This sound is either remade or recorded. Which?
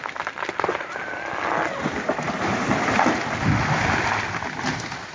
recorded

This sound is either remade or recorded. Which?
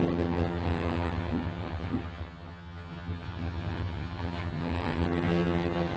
remade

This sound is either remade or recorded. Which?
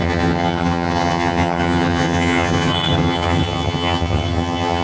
remade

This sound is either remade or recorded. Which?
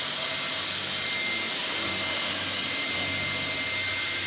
recorded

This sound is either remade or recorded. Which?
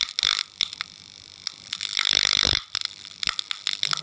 recorded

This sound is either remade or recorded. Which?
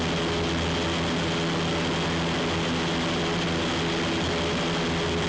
recorded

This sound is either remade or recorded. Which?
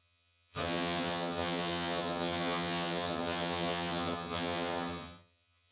remade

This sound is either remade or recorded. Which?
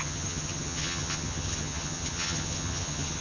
remade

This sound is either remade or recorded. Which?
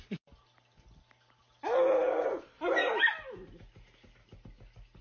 recorded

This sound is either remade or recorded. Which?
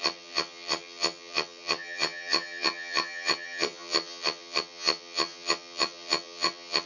remade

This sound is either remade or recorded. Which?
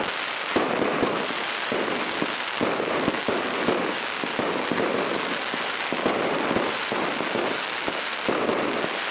recorded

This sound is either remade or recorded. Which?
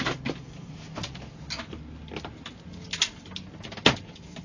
recorded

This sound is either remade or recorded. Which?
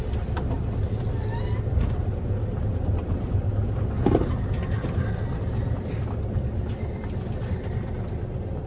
recorded